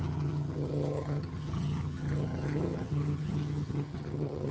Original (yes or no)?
no